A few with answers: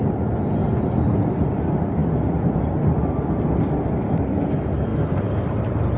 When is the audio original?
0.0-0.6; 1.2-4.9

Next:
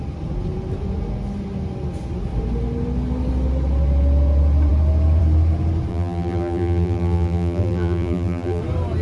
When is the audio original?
0.0-5.9; 8.6-9.0

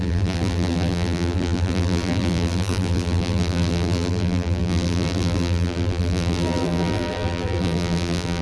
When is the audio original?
none

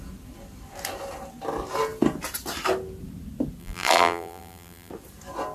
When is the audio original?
0.0-3.6; 4.9-5.5